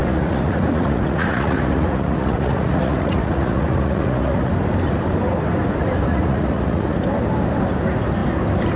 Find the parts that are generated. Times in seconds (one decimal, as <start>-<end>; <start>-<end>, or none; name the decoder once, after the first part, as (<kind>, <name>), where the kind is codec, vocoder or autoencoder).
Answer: 0.0-4.5 (vocoder, Vocos); 6.1-7.0